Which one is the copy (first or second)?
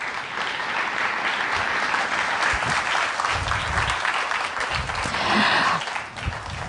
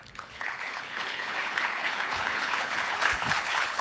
second